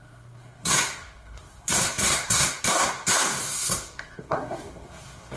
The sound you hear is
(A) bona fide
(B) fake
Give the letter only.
B